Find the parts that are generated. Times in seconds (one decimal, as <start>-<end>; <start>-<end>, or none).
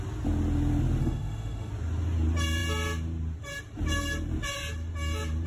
1.0-1.7